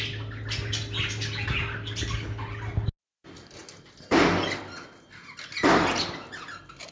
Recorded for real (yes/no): yes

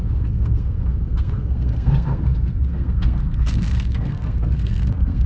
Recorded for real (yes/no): no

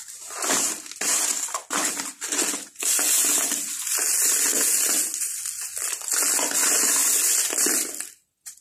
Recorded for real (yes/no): yes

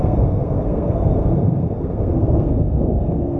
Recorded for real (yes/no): no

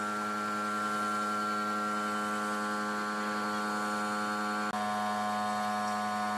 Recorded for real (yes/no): yes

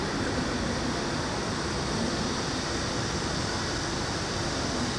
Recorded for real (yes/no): yes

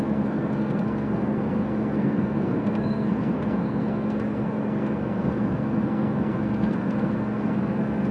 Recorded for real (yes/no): no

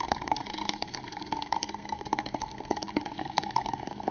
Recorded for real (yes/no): no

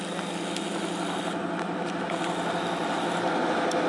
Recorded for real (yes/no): yes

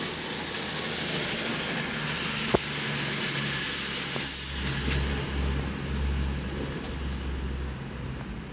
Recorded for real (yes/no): yes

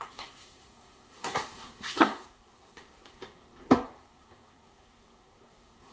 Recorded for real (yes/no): no